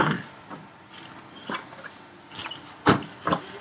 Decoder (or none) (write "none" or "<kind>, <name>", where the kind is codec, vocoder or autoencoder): none